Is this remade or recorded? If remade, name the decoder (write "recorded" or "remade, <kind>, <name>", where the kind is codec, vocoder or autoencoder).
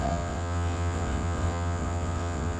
remade, vocoder, WaveNeXt